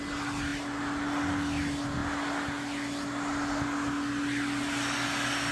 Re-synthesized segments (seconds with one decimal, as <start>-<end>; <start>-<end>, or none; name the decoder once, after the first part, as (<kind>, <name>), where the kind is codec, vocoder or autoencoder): none